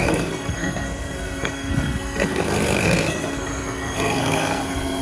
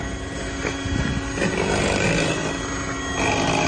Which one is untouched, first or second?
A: second